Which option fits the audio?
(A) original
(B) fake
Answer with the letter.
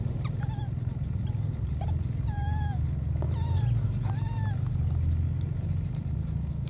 A